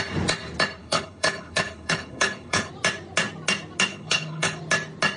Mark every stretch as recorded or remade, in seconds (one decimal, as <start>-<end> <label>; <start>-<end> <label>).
0.0-0.8 recorded; 0.8-2.7 remade; 2.7-3.9 recorded; 3.9-4.6 remade; 4.6-5.2 recorded